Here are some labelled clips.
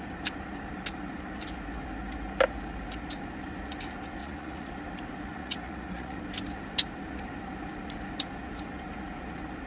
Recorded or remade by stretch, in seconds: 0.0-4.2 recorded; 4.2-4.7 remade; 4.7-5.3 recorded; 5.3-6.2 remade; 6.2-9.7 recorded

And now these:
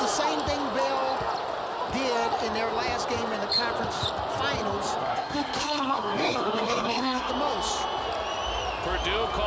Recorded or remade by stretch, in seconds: 0.0-5.0 recorded; 5.0-7.3 remade; 7.3-9.5 recorded

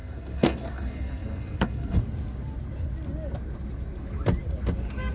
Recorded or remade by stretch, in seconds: 0.0-2.0 remade; 2.0-5.1 recorded

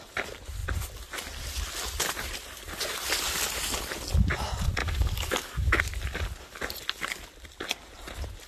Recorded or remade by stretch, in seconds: 0.0-4.8 recorded; 4.8-5.8 remade; 5.8-8.5 recorded

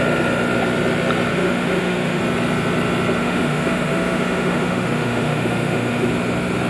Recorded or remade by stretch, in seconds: 0.0-1.3 recorded; 1.3-2.2 remade; 2.2-3.2 recorded; 3.2-6.1 remade; 6.1-6.7 recorded

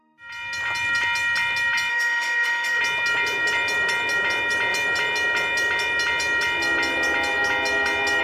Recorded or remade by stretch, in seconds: 0.0-1.9 recorded; 1.9-2.8 remade; 2.8-8.2 recorded

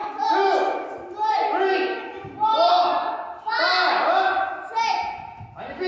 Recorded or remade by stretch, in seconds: 0.0-5.9 recorded

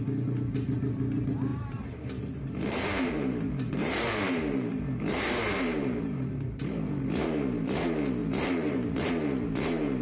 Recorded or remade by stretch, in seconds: 0.0-1.5 recorded; 1.5-6.7 remade; 6.7-8.2 recorded; 8.2-9.1 remade; 9.1-10.0 recorded